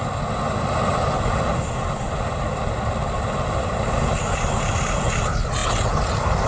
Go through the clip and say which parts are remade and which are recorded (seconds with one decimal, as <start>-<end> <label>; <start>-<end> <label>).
0.0-6.5 recorded